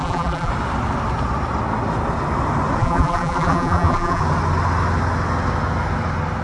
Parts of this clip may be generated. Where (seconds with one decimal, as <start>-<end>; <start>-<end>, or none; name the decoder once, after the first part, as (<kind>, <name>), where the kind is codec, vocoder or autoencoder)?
0.0-0.5 (vocoder, BigVGAN v2); 2.8-4.2